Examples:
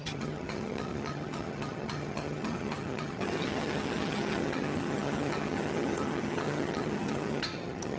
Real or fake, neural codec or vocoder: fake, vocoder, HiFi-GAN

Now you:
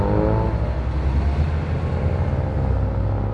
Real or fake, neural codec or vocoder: real